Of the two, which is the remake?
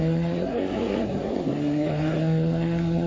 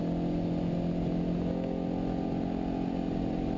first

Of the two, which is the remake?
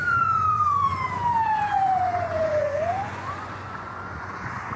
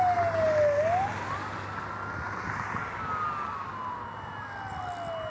first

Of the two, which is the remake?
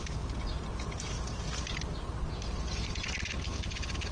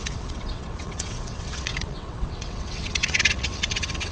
second